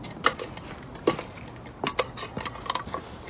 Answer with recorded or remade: recorded